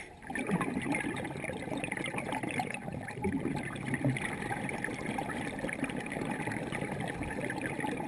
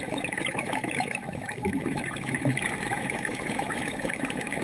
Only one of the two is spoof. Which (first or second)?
second